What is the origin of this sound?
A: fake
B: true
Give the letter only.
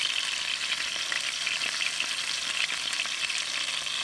B